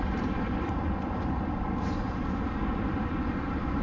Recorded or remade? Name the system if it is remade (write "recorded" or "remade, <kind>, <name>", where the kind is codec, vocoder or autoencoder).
remade, vocoder, BigVGAN v2